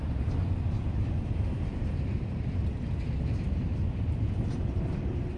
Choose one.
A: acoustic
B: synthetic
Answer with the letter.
A